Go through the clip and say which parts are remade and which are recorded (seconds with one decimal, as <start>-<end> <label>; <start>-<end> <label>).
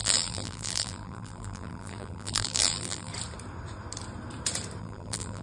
0.0-3.1 remade; 3.1-4.8 recorded; 4.8-5.4 remade